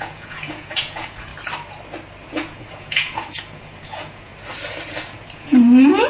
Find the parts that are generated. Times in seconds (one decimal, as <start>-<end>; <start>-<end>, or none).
0.0-1.3; 2.3-4.3; 5.0-6.1